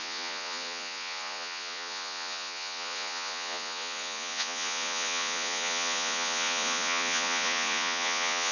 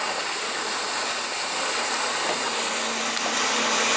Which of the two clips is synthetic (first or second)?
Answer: first